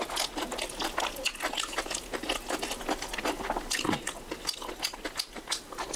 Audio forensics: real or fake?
real